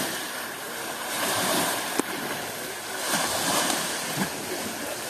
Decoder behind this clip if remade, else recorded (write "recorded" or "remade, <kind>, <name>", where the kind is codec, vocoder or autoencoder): remade, vocoder, BigVGAN v2